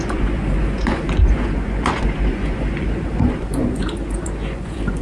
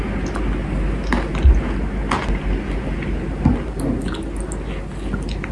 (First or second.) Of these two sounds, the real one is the second